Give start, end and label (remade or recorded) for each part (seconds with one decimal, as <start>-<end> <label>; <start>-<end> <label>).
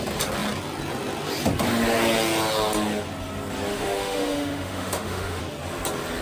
0.0-3.7 recorded; 3.7-5.4 remade; 5.4-6.2 recorded